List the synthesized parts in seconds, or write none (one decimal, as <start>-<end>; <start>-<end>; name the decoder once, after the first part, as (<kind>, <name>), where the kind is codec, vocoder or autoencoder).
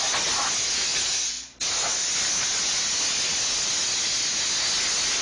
none